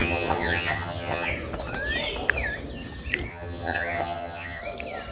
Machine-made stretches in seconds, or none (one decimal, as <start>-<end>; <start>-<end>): 0.0-1.3; 3.3-4.6